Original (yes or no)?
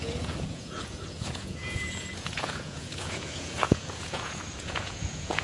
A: no